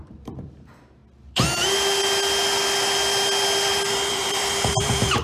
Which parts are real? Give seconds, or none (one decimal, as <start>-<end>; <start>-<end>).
1.0-4.1